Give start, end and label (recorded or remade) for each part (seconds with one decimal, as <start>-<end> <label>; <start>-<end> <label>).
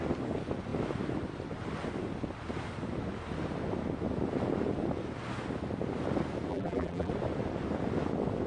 0.0-6.5 recorded; 6.5-7.1 remade; 7.1-8.5 recorded